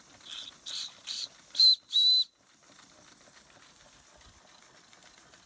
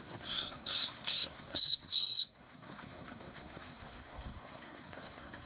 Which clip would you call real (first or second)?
first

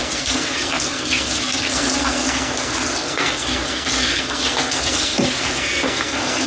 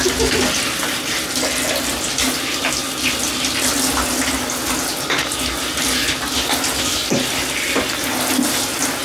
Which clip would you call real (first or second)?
second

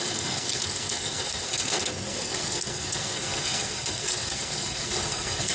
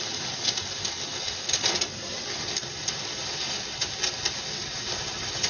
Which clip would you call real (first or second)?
second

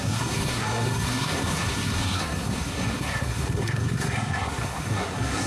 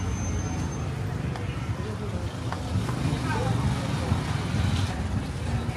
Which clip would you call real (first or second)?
second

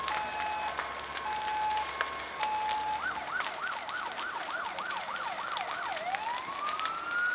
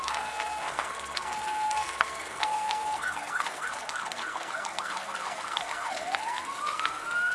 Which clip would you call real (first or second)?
first